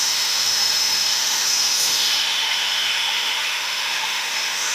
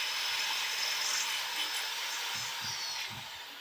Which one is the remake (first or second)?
first